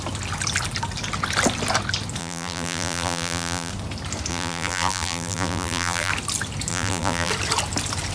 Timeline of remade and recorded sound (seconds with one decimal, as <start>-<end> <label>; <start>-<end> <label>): 0.0-2.2 recorded; 2.2-3.7 remade; 3.7-4.3 recorded; 4.3-6.1 remade; 6.1-6.7 recorded; 6.7-7.3 remade; 7.3-8.1 recorded